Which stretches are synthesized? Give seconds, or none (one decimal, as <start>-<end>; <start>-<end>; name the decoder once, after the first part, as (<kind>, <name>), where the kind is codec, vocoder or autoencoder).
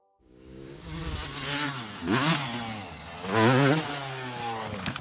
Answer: 0.0-1.0 (codec, DAC)